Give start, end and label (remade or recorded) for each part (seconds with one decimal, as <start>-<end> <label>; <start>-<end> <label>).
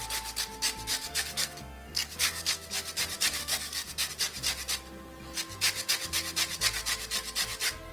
0.0-0.9 recorded; 0.9-2.7 remade; 2.7-3.4 recorded; 3.4-4.1 remade; 4.1-7.9 recorded